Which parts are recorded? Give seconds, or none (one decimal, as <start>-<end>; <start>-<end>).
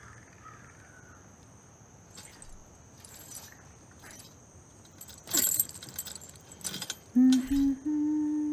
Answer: 0.0-2.6; 6.6-8.5